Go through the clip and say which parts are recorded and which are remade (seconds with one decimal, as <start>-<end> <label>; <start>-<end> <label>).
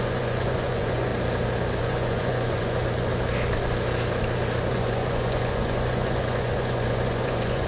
0.0-1.1 remade; 1.1-1.8 recorded; 1.8-2.8 remade; 2.8-4.7 recorded; 4.7-7.7 remade